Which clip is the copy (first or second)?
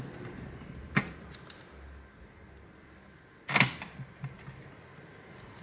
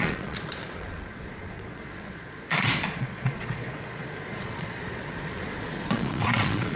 second